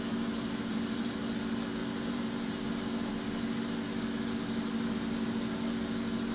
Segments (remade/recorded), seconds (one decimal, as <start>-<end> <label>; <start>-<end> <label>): 0.0-0.7 recorded; 0.7-1.2 remade; 1.2-1.8 recorded; 1.8-3.2 remade; 3.2-6.3 recorded